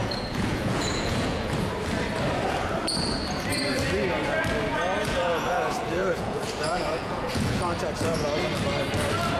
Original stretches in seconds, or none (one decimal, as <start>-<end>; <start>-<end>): 1.5-4.7; 7.6-9.4